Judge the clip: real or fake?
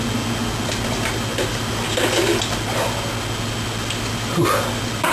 real